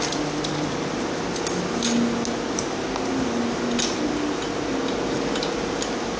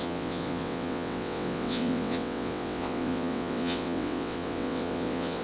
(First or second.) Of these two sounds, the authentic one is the first